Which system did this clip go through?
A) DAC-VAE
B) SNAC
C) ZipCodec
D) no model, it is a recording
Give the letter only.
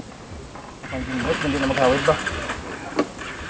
D